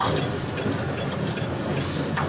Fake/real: real